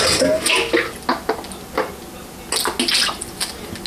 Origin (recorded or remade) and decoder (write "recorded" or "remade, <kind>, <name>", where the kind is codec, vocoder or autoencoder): recorded